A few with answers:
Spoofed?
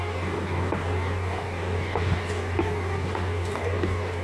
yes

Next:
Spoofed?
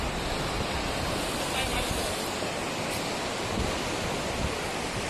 no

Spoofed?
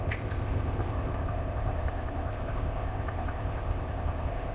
yes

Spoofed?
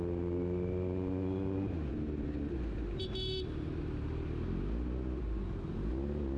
no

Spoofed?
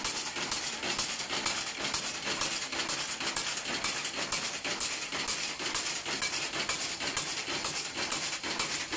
no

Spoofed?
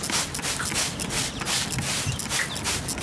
no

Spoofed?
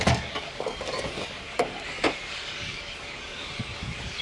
yes